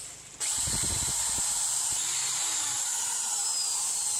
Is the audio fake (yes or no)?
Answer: no